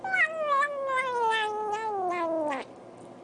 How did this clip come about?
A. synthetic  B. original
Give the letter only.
B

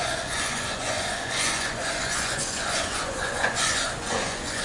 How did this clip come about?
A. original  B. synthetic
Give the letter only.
B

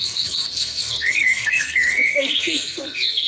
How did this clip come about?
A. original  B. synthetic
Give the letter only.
B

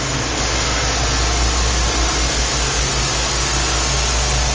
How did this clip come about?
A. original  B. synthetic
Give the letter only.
A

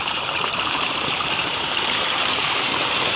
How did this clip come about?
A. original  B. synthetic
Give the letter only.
B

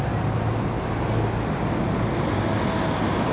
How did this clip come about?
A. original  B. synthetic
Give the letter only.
A